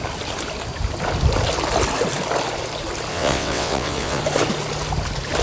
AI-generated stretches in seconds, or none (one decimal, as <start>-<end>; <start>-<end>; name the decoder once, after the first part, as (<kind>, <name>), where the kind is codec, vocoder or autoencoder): 3.1-4.2 (vocoder, WaveNeXt)